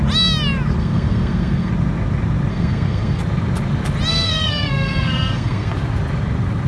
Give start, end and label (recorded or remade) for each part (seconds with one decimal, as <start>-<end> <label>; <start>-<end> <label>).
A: 0.0-0.8 recorded; 0.8-1.7 remade; 1.7-2.5 recorded; 2.5-3.2 remade; 3.2-4.1 recorded; 4.1-5.7 remade; 5.7-6.7 recorded